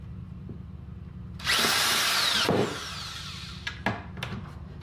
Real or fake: real